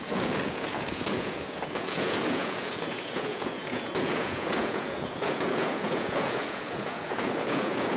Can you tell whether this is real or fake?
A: fake